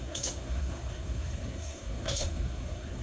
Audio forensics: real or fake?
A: fake